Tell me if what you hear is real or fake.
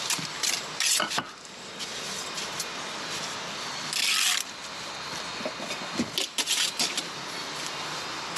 real